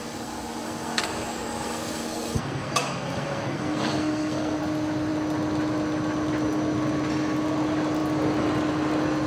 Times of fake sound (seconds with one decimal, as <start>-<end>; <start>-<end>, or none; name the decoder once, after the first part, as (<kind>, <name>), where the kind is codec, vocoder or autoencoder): 0.0-4.6 (codec, SNAC)